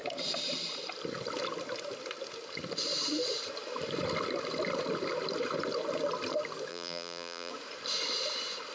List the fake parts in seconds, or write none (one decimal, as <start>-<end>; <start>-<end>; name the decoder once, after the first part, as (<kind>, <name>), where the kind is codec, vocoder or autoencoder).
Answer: 6.7-7.5 (vocoder, BigVGAN v2)

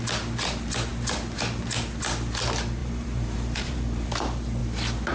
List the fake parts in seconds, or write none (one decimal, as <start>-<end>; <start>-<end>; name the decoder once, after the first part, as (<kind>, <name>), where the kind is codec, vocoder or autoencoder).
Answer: 2.8-4.1 (vocoder, BigVGAN v2)